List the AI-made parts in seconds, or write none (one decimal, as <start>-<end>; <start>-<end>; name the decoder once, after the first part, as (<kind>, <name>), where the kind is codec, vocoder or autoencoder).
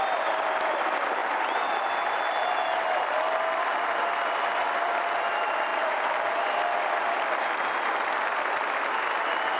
none